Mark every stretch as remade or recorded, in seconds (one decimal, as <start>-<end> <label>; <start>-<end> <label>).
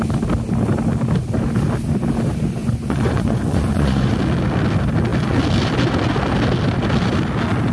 0.0-2.6 recorded; 2.6-4.1 remade; 4.1-7.7 recorded